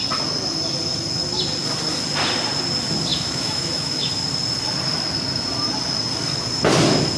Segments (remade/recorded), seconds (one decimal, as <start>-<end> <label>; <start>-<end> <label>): 0.0-3.1 recorded; 3.1-4.1 remade; 4.1-7.2 recorded